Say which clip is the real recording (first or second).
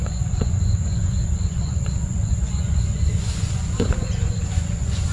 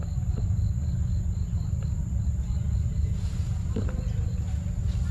second